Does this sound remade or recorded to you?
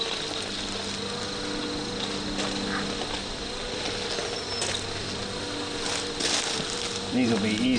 recorded